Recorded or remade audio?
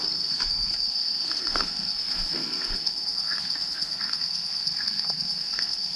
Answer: remade